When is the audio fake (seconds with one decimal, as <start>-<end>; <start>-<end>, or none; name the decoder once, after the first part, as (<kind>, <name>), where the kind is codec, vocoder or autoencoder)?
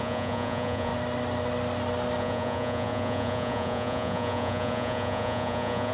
0.0-0.9 (vocoder, Vocos); 2.2-5.9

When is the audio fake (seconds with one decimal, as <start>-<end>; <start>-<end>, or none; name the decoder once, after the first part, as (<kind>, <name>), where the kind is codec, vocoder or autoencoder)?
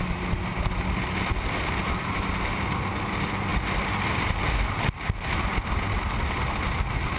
none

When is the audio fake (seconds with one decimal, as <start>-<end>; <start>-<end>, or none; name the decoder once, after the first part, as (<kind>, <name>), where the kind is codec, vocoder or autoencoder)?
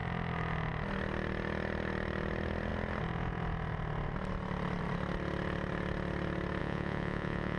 6.6-7.6 (vocoder, Vocos)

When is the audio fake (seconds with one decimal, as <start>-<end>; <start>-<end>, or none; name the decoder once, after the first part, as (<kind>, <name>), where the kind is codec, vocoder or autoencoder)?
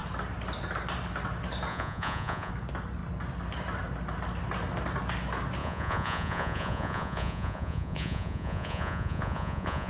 1.7-2.5 (vocoder, Vocos); 5.6-9.9